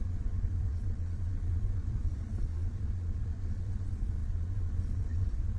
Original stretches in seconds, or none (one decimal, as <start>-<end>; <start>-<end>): none